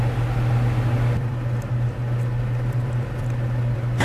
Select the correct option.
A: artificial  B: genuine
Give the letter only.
B